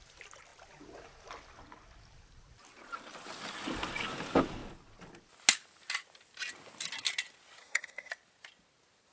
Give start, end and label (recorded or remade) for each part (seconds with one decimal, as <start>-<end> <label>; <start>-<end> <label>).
0.0-7.6 recorded; 7.6-8.1 remade; 8.1-9.1 recorded